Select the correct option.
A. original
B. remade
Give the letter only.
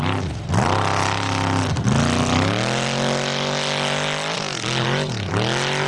A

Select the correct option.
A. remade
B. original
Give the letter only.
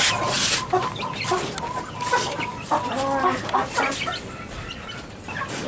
B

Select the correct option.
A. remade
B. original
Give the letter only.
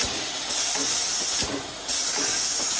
B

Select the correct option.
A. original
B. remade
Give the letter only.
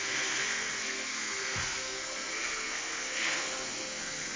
B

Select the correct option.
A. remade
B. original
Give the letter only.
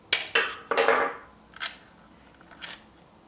B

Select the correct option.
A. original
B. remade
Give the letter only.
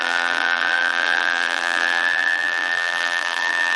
B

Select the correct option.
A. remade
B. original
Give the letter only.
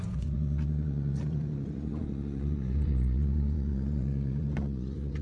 A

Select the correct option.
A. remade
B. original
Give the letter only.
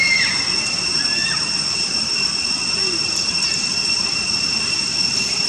B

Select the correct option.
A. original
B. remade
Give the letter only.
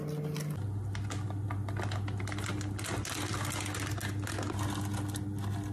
A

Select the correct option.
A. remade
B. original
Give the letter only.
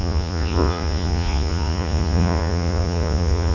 A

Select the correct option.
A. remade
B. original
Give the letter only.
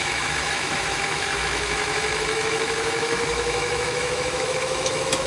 A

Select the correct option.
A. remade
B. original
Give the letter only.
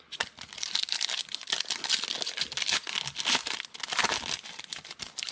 B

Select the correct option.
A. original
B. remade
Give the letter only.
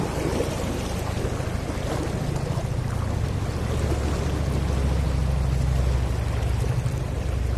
A